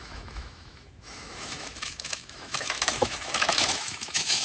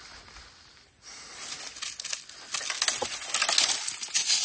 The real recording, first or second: second